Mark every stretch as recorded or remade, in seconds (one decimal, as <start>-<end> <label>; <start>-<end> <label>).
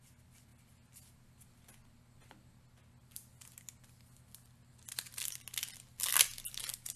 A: 0.0-7.0 recorded